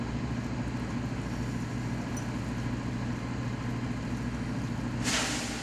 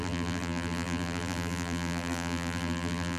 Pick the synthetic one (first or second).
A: second